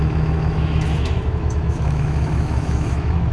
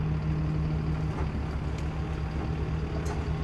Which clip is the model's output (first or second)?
first